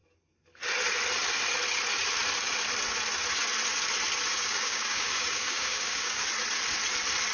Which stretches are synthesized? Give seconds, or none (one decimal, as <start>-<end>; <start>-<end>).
4.3-6.2